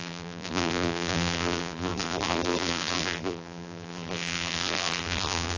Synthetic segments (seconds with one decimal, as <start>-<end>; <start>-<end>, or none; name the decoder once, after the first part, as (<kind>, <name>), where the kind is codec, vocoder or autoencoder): 0.0-5.6 (vocoder, BigVGAN v2)